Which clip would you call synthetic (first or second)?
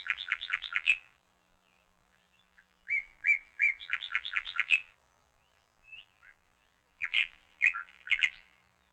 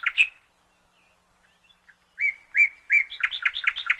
first